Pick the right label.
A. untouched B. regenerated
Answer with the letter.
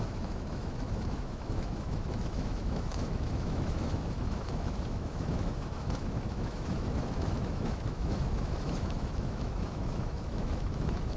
B